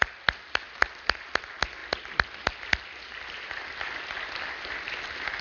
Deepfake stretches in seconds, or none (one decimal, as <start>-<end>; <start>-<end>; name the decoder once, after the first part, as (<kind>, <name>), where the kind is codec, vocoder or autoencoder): 0.0-1.2 (vocoder, BigVGAN v2); 1.8-5.0